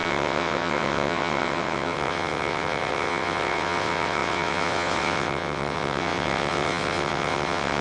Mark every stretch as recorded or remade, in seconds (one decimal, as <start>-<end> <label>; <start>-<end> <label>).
0.0-7.8 remade